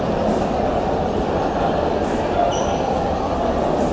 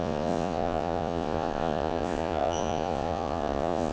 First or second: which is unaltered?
first